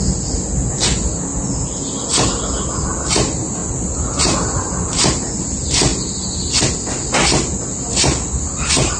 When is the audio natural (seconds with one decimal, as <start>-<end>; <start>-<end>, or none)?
0.0-9.0